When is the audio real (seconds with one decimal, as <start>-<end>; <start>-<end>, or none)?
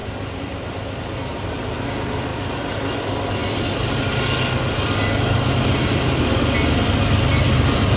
0.0-2.3; 2.8-8.0